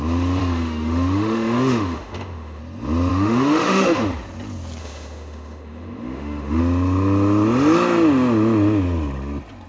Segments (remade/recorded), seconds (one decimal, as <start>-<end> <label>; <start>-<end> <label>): 0.0-0.4 recorded; 0.4-2.6 remade; 2.6-3.1 recorded; 3.1-4.0 remade; 4.0-4.8 recorded; 4.8-6.6 remade; 6.6-9.7 recorded